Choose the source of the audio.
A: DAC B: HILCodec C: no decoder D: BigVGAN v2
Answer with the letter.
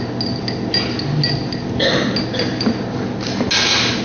C